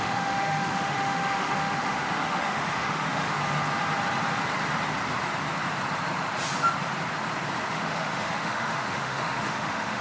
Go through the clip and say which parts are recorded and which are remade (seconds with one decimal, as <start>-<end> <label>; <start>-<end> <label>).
0.0-3.4 remade; 3.4-7.7 recorded; 7.7-10.0 remade